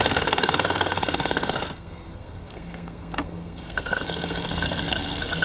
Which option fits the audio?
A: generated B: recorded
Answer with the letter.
A